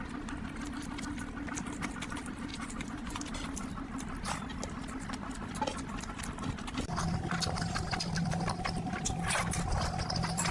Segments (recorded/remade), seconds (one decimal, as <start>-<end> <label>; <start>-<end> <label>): 0.0-2.5 recorded; 2.5-3.2 remade; 3.2-10.5 recorded